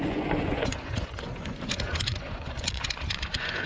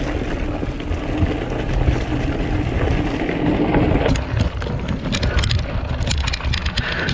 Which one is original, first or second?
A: second